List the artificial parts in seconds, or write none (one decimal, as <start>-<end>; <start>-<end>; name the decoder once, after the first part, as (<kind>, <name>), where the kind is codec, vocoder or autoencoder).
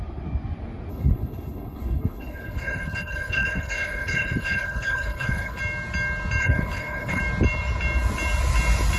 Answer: 0.9-5.6 (codec, HILCodec); 6.4-7.2